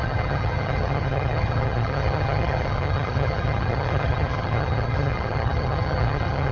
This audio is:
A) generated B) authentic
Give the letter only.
A